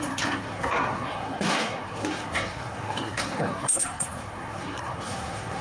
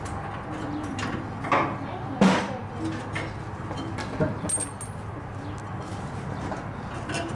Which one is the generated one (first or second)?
first